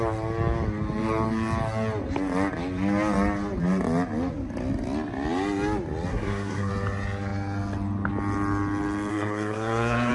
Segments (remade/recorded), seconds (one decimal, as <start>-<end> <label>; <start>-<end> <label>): 0.0-6.1 recorded; 6.1-6.7 remade; 6.7-9.1 recorded; 9.1-10.1 remade